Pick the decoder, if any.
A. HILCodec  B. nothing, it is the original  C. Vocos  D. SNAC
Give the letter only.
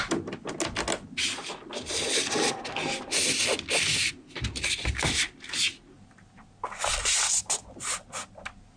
B